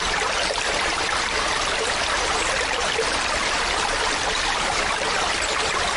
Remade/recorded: remade